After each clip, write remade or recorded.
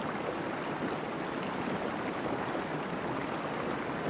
recorded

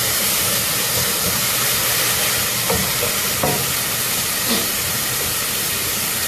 remade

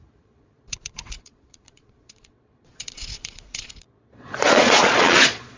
remade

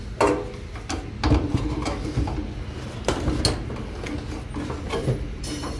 recorded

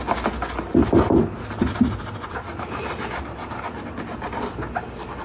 recorded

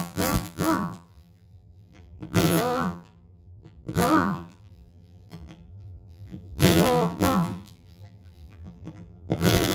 remade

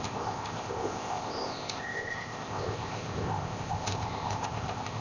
remade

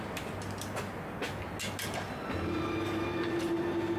recorded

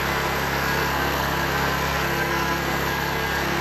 remade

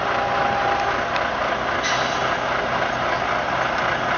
recorded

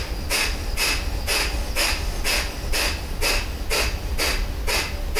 recorded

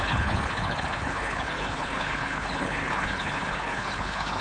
remade